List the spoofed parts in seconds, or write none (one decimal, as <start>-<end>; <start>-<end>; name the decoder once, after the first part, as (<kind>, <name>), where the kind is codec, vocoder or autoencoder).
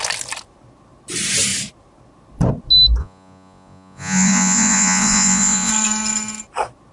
3.0-5.7 (vocoder, Vocos)